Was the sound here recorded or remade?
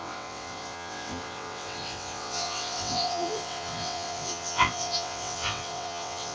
remade